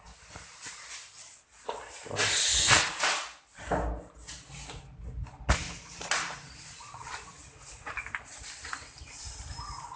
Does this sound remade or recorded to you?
recorded